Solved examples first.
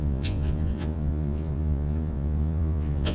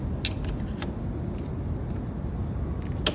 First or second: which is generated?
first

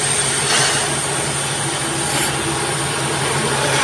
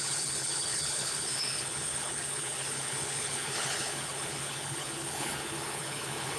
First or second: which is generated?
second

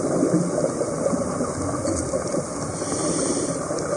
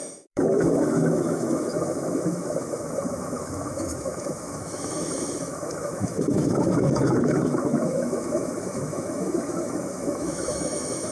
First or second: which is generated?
second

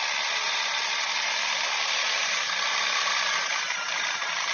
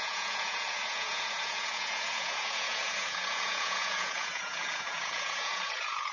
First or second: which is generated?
second